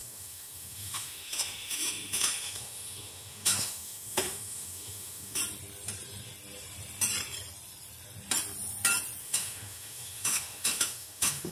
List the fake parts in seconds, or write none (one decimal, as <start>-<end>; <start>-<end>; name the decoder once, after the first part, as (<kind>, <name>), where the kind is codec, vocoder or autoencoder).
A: 0.0-5.4 (autoencoder, DAC-VAE); 9.2-11.5